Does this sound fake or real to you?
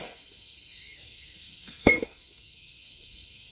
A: fake